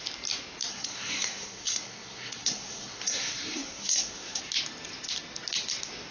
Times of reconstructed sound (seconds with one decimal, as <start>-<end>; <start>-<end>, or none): 0.7-4.4